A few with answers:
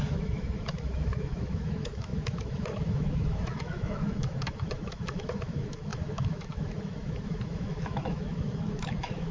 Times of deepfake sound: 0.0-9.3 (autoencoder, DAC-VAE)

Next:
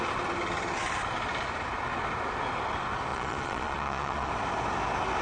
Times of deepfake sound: 3.1-4.3 (vocoder, Vocos)